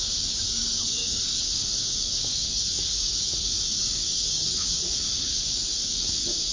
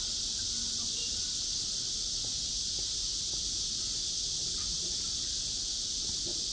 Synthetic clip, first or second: first